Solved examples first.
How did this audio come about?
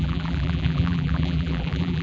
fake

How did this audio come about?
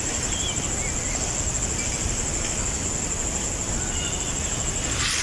real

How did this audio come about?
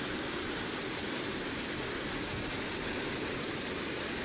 real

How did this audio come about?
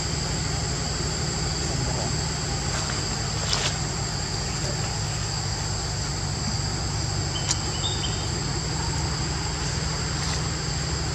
real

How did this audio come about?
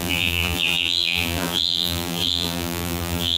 fake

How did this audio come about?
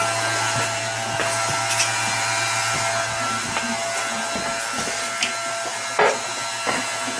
real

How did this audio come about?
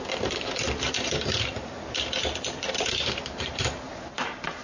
fake